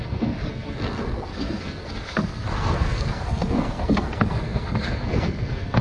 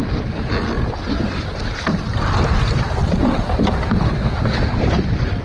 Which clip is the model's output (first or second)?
first